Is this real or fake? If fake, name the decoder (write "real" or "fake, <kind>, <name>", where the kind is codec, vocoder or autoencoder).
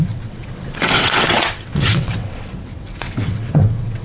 fake, vocoder, WaveNeXt